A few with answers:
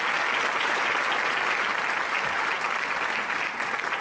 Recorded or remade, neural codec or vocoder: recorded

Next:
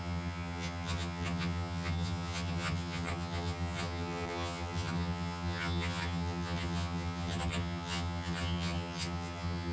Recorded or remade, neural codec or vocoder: remade, vocoder, HiFi-GAN